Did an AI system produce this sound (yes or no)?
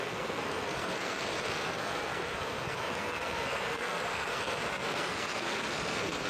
yes